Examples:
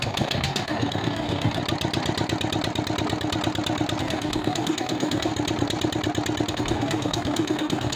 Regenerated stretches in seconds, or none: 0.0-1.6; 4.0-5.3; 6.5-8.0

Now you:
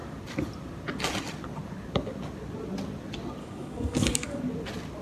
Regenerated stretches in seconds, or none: 3.4-4.4

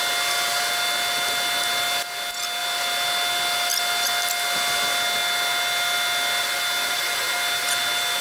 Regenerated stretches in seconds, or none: none